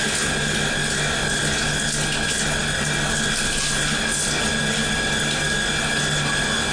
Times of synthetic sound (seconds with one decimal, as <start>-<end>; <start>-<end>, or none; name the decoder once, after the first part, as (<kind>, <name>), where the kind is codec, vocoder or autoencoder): none